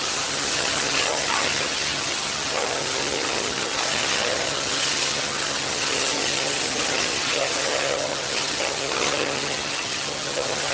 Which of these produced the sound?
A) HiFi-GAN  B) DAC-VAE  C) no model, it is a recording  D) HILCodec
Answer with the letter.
A